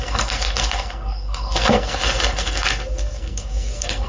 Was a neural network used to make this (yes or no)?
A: yes